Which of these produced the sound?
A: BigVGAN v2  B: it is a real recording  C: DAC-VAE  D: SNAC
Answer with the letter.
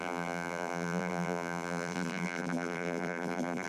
A